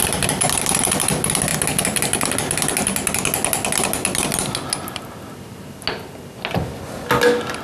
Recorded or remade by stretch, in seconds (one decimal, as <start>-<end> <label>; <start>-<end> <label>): 0.0-7.6 recorded